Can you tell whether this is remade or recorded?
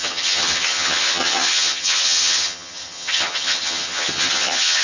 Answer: remade